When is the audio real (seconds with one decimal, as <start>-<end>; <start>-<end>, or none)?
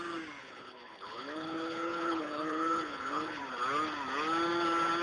0.0-0.4; 3.4-5.0